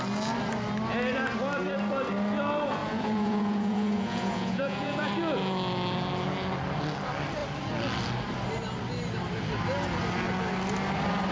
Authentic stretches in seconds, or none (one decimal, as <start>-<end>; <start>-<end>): 0.0-2.8; 5.1-11.3